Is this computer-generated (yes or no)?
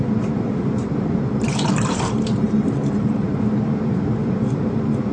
yes